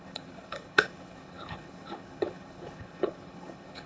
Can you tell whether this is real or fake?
fake